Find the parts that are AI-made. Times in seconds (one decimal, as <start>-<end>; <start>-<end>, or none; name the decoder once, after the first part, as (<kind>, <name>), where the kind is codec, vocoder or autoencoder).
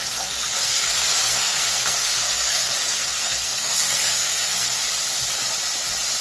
0.0-4.8 (codec, SNAC)